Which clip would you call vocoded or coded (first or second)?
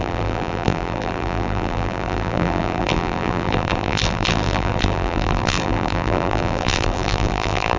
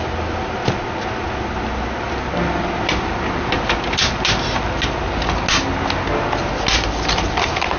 first